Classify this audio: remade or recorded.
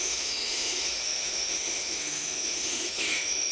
remade